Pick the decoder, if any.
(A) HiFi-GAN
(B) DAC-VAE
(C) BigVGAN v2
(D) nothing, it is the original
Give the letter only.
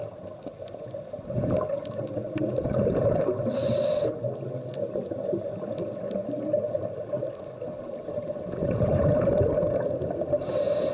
D